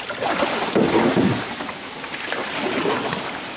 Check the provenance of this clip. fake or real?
real